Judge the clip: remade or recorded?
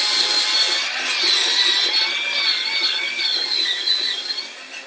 recorded